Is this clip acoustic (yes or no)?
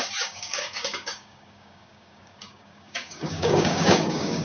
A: no